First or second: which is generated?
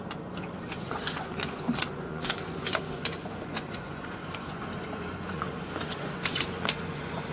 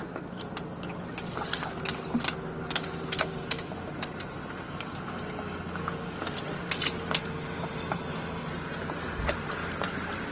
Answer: first